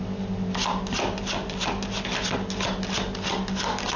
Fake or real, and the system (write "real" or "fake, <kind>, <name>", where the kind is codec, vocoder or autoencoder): real